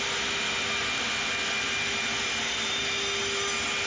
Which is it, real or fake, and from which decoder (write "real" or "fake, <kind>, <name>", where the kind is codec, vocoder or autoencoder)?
real